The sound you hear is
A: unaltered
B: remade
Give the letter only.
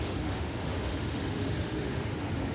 B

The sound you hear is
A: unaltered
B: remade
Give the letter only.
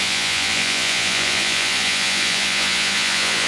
B